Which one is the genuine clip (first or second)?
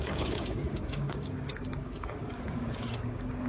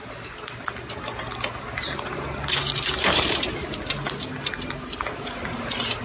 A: second